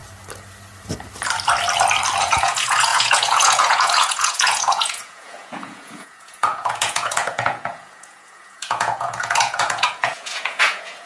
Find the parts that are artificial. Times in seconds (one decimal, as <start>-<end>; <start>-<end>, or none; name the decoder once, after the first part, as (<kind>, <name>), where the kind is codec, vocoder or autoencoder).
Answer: 2.2-11.1 (vocoder, Vocos)